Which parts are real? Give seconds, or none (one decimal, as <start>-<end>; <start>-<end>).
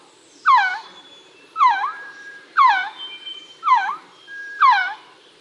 0.0-0.7; 3.9-4.4